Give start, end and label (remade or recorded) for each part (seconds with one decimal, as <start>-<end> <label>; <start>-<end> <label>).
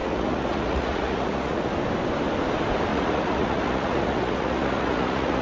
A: 0.0-1.7 remade; 1.7-2.9 recorded; 2.9-5.4 remade